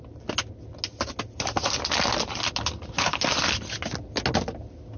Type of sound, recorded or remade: recorded